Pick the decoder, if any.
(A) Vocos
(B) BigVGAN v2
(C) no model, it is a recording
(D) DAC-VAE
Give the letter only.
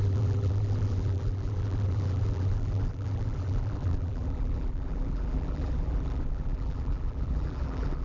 B